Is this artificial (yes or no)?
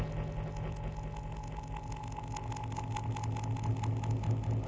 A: no